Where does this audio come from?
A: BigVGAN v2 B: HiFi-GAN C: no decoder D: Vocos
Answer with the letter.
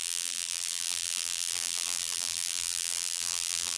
A